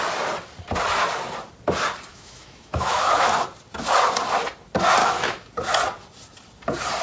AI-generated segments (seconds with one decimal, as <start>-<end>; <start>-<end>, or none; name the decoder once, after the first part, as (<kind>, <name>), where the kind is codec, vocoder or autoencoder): 2.1-3.3 (autoencoder, DAC-VAE); 5.0-5.5